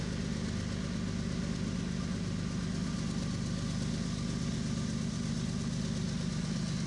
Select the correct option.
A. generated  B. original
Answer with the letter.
B